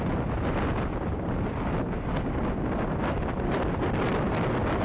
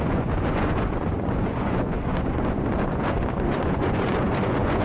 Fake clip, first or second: second